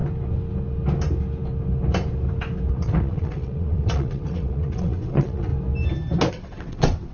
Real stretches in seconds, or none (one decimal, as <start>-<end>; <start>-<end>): 0.0-2.7; 5.5-6.3